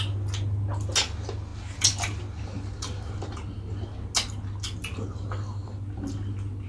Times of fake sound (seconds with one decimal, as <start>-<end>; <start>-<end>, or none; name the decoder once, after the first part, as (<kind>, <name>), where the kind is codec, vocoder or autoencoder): none